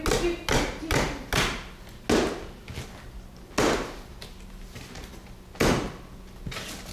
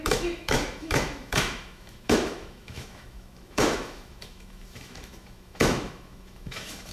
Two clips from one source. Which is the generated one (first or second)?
second